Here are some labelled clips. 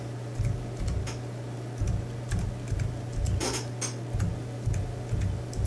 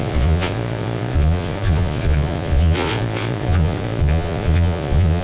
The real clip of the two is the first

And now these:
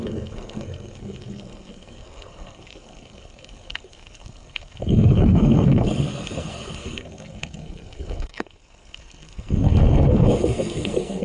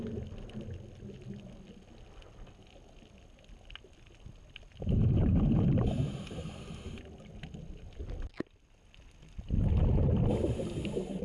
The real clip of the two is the second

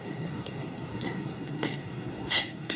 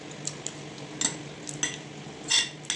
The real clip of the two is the second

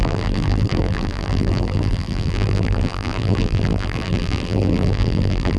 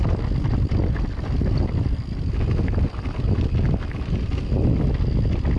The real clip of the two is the second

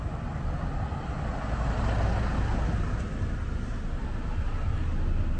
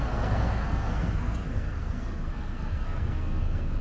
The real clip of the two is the first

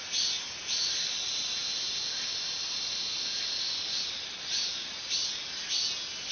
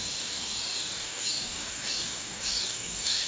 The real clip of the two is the first